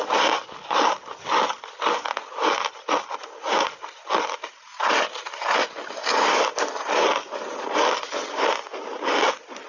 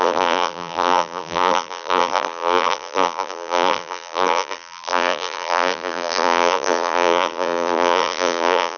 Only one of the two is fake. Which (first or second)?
second